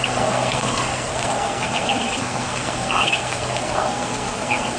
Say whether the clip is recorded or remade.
remade